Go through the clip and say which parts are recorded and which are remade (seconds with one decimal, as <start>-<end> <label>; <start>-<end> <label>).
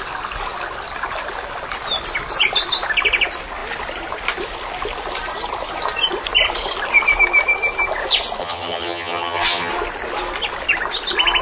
0.0-8.4 recorded; 8.4-9.7 remade; 9.7-11.4 recorded